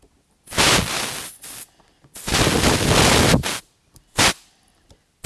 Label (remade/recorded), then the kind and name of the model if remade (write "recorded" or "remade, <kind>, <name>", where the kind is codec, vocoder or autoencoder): recorded